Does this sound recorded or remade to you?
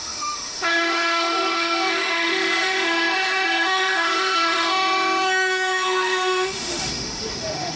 remade